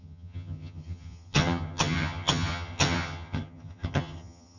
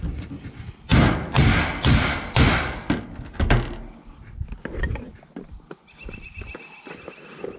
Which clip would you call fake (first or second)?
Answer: first